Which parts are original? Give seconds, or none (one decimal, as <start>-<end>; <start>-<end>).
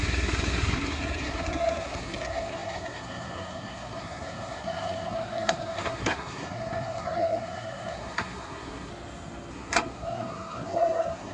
8.9-9.5